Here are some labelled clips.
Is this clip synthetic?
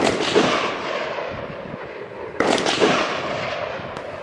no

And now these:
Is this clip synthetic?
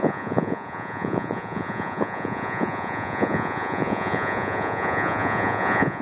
yes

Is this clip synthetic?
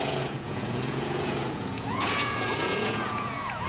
yes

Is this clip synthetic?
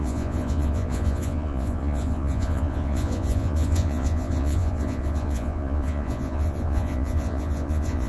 yes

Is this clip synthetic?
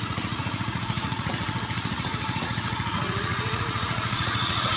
yes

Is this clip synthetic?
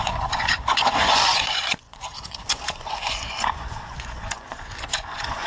yes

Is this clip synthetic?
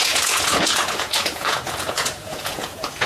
yes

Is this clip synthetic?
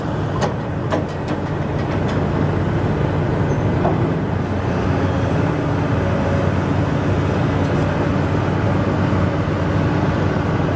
no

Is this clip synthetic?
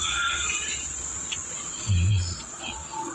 yes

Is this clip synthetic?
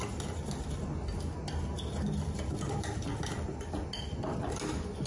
no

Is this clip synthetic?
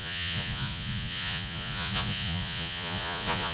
yes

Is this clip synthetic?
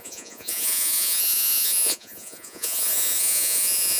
yes